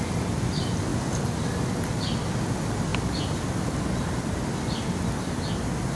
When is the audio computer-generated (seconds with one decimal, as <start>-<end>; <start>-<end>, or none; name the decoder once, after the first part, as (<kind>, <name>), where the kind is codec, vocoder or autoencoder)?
none